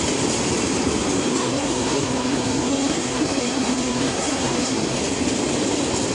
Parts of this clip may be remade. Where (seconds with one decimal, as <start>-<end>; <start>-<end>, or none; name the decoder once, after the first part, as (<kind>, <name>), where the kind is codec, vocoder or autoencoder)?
1.3-5.0 (codec, SNAC)